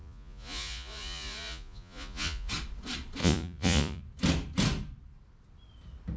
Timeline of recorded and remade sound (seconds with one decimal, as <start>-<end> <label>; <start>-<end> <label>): 0.0-2.5 remade; 2.5-3.2 recorded; 3.2-4.0 remade; 4.0-6.2 recorded